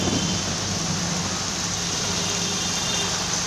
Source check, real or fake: real